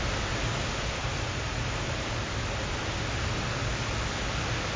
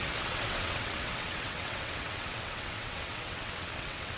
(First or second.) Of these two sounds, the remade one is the second